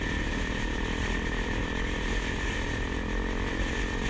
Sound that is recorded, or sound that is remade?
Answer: recorded